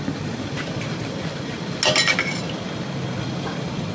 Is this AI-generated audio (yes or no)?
no